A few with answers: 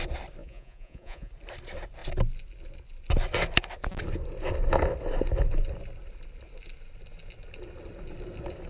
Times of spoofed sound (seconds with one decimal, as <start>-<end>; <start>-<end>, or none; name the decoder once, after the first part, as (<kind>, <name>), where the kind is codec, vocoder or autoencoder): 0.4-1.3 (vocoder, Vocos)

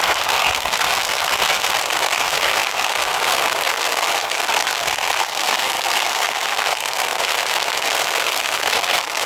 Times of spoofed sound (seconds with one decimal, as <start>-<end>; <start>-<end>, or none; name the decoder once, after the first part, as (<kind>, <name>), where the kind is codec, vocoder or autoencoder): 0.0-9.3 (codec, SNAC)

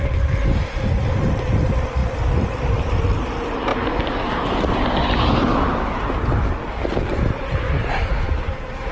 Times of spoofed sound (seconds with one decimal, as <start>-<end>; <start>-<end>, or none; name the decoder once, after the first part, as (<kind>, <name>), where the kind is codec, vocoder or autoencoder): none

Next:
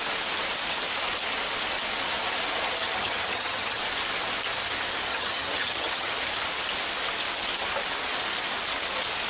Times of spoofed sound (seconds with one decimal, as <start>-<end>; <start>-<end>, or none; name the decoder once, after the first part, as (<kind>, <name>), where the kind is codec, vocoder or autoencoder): 2.8-3.8 (vocoder, HiFi-GAN); 5.1-6.2